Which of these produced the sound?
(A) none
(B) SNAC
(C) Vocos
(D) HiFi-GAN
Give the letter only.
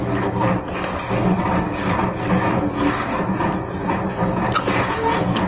A